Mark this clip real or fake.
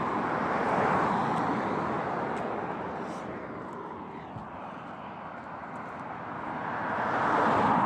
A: real